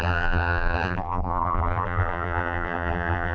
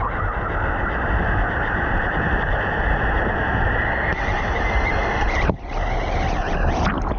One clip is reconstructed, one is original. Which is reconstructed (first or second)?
first